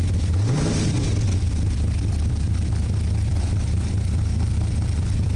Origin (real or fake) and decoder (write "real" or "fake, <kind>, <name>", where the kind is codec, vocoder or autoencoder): fake, vocoder, BigVGAN v2